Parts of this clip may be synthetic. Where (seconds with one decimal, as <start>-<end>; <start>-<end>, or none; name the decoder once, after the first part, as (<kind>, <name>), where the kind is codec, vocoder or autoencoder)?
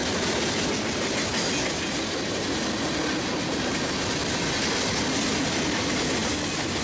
none